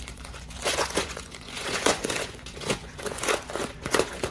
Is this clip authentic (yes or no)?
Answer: no